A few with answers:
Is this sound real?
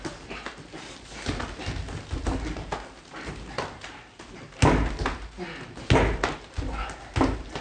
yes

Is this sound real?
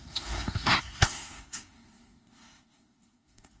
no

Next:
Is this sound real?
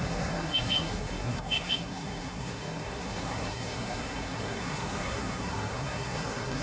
no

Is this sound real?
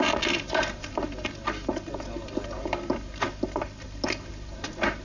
yes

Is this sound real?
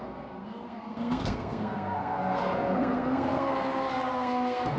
no